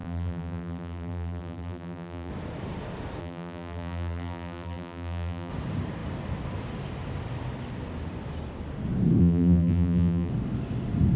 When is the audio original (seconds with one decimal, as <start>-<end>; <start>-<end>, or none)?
2.3-3.2; 5.5-9.2; 10.3-11.2